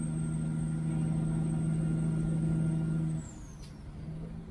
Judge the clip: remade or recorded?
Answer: recorded